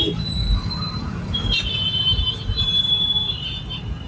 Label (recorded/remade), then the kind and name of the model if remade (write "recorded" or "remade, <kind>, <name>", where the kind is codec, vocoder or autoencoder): remade, vocoder, BigVGAN v2